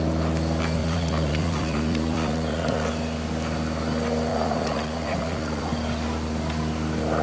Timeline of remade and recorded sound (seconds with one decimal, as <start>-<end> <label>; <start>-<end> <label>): 0.0-0.8 recorded; 0.8-2.9 remade; 2.9-4.3 recorded; 4.3-5.7 remade; 5.7-7.2 recorded